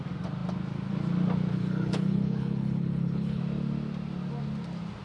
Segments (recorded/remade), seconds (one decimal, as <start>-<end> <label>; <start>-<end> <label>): 0.0-1.5 recorded; 1.5-3.4 remade; 3.4-5.0 recorded